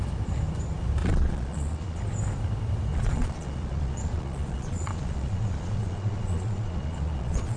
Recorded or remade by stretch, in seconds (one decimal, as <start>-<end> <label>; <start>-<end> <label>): 0.0-1.0 recorded; 1.0-2.0 remade; 2.0-2.9 recorded; 2.9-7.6 remade